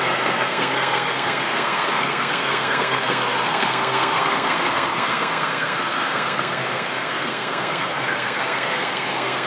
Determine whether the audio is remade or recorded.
remade